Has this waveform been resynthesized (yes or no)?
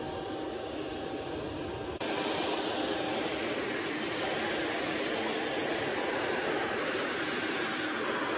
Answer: no